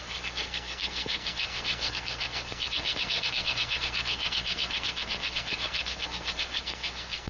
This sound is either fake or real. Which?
fake